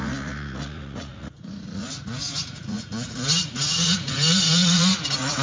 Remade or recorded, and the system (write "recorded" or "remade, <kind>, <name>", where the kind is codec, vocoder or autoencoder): remade, vocoder, Vocos